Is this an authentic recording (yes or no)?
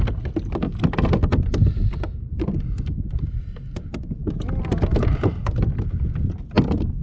yes